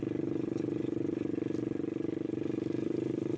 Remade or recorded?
recorded